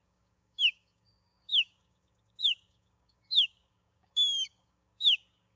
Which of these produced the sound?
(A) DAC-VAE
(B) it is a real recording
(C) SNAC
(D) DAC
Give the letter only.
D